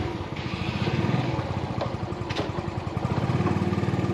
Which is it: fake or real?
real